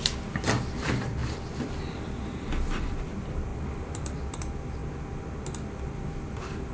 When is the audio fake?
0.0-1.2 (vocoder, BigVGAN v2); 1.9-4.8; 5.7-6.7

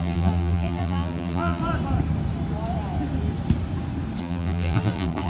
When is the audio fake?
0.0-1.6 (vocoder, BigVGAN v2); 4.2-5.3

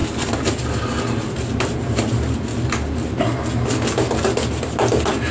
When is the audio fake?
1.3-2.5 (vocoder, BigVGAN v2)

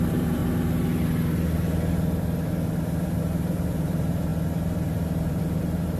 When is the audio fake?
0.0-0.4 (vocoder, BigVGAN v2); 3.2-6.0

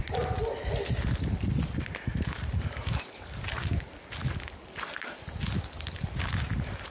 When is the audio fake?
none

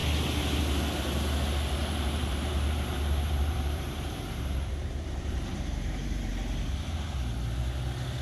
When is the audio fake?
1.8-6.3 (vocoder, BigVGAN v2)

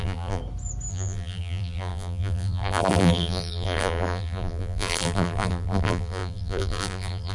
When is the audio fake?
0.0-0.4 (vocoder, BigVGAN v2); 0.9-7.3

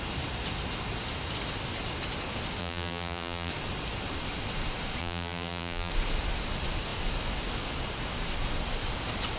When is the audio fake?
2.6-3.5 (vocoder, BigVGAN v2); 5.0-5.9